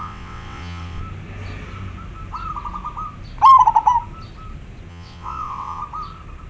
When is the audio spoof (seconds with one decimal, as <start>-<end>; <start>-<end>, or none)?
0.0-1.0; 4.9-5.8